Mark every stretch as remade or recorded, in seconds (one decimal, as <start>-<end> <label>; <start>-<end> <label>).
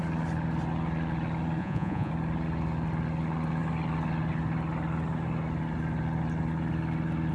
0.0-1.6 recorded; 1.6-2.1 remade; 2.1-7.3 recorded